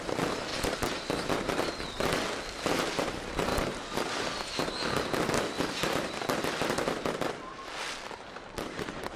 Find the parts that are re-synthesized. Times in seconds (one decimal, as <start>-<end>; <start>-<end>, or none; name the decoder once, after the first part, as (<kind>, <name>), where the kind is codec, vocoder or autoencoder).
none